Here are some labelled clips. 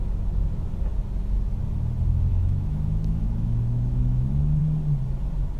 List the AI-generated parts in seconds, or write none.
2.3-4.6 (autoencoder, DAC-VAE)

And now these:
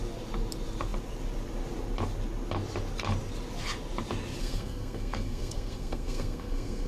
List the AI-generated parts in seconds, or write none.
4.4-6.9 (codec, SNAC)

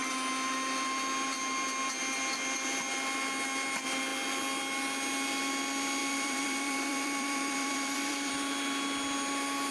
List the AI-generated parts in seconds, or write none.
6.0-8.3 (vocoder, BigVGAN v2)